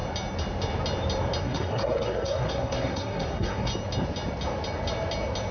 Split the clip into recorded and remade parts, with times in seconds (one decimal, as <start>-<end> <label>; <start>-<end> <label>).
0.0-1.4 recorded; 1.4-3.7 remade; 3.7-5.5 recorded